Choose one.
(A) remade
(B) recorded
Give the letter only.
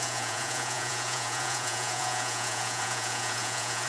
A